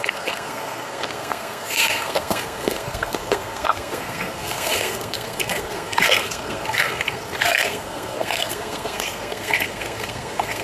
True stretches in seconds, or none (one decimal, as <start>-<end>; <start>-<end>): none